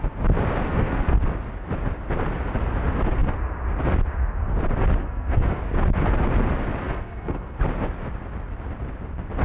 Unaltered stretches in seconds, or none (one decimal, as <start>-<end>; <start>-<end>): 0.0-0.7; 1.2-5.0; 5.6-6.8; 7.6-9.4